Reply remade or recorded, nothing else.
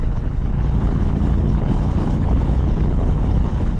remade